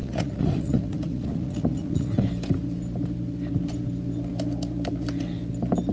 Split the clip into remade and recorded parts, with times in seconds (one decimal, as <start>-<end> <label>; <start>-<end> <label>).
0.0-2.2 remade; 2.2-5.9 recorded